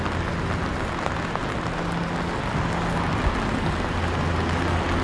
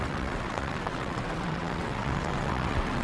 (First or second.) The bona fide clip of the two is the first